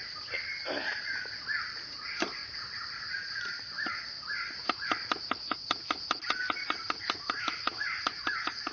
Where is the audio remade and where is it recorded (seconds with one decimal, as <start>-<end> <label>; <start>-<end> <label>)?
0.0-8.7 recorded